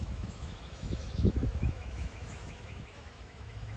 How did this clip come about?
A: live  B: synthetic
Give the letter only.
B